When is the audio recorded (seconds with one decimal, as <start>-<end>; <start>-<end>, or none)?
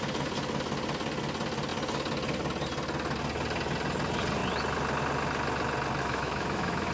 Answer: 0.0-6.0